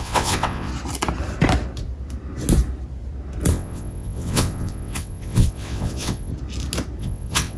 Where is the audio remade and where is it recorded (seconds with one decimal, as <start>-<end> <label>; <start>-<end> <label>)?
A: 0.0-0.7 remade; 0.7-3.5 recorded; 3.5-6.3 remade; 6.3-7.0 recorded; 7.0-7.6 remade